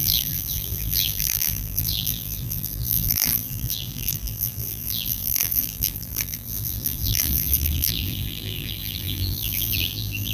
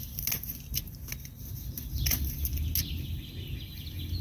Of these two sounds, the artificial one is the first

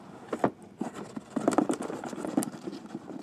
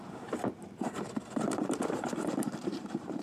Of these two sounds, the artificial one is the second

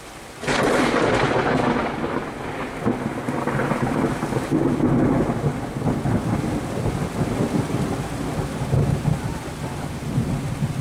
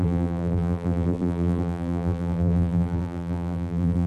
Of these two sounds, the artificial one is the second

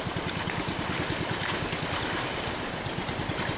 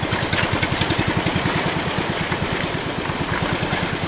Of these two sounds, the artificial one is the first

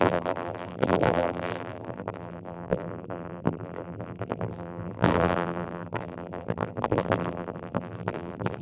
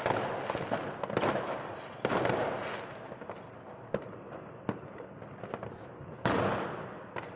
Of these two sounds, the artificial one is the first